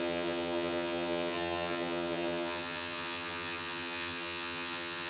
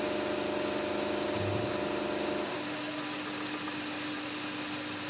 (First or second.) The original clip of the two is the second